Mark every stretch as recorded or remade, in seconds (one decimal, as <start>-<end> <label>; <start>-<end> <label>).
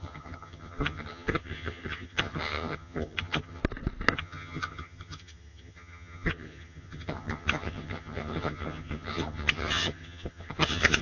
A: 0.0-3.6 remade; 3.6-4.1 recorded; 4.1-11.0 remade